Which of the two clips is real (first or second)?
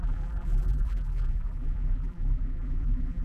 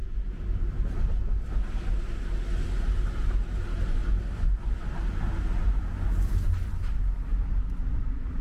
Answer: second